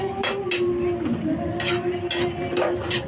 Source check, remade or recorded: recorded